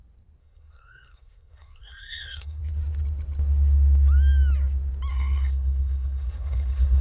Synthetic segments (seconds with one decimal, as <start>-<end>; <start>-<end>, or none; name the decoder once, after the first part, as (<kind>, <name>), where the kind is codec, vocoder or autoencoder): 0.4-2.6 (codec, SNAC); 5.1-7.0